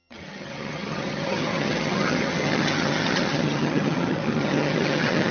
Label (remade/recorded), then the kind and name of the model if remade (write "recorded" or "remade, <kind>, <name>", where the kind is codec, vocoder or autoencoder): remade, vocoder, HiFi-GAN